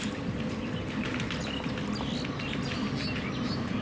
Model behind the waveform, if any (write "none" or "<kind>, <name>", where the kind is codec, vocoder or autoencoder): none